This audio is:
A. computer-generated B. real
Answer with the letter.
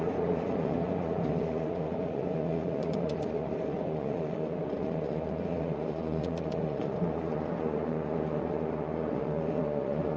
A